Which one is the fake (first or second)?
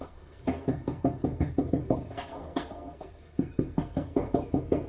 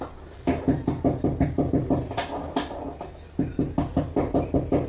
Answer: first